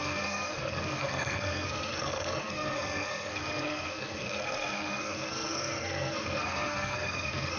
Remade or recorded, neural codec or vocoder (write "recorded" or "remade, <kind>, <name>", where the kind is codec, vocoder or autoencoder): remade, codec, SNAC